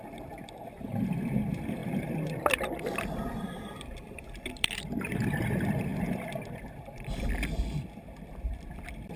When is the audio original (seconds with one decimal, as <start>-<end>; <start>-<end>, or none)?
1.8-3.4; 5.9-8.0